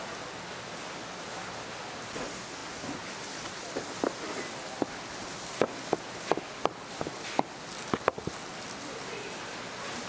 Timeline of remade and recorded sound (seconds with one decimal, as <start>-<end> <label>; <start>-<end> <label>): 0.0-10.1 recorded